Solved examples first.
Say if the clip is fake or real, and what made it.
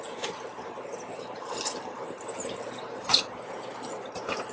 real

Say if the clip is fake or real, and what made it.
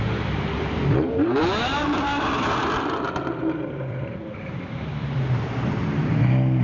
fake, vocoder, BigVGAN v2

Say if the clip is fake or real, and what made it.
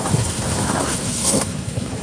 fake, codec, SNAC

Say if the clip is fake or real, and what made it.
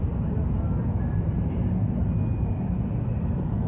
real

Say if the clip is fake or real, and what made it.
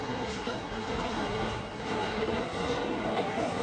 fake, codec, SNAC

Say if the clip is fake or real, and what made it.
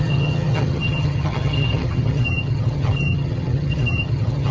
fake, vocoder, HiFi-GAN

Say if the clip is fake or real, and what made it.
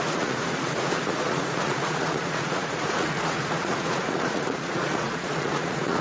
fake, vocoder, Vocos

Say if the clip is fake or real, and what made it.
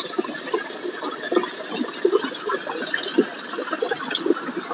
real